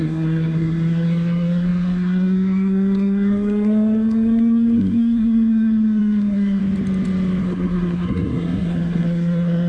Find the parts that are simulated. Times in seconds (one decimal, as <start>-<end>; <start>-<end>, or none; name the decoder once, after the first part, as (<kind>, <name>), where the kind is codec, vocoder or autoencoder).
0.0-6.6 (codec, SNAC); 7.4-9.7